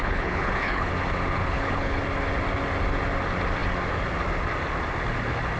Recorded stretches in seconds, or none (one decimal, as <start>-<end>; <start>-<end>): 0.9-1.4; 2.0-5.6